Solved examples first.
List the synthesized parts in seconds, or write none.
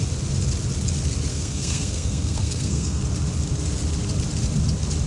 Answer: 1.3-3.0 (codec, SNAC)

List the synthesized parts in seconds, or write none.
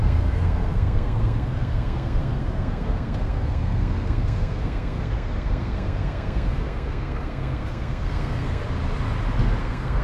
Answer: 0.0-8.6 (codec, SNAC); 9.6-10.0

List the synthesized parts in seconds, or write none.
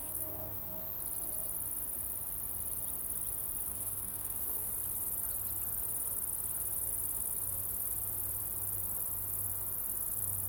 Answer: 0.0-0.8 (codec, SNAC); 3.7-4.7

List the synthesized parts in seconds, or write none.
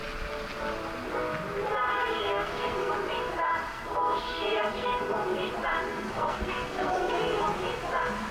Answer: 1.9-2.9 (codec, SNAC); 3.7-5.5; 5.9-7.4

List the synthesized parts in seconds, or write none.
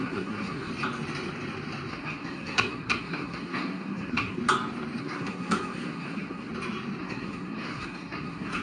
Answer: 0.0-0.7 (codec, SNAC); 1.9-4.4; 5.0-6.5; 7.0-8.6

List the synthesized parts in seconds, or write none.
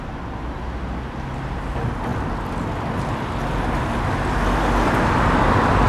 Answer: none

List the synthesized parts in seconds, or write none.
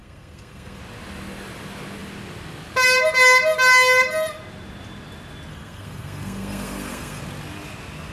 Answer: 0.0-0.8 (codec, SNAC); 5.5-7.2